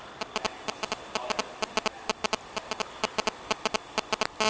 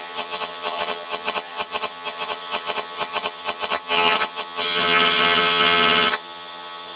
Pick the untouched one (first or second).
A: first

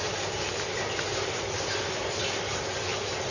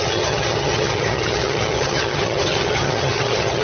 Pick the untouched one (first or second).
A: first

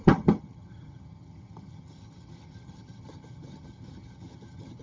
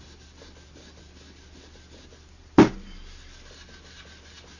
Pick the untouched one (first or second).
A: second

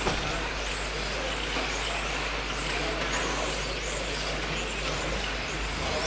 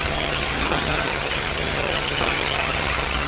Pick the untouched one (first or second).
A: first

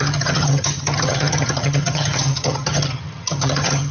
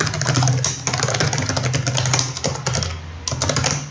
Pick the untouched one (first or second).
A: second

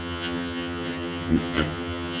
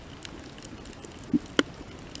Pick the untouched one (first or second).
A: second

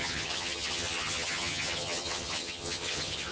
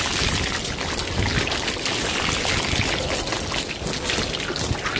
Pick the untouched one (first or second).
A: second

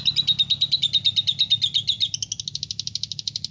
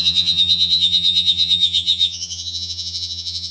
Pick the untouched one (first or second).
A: first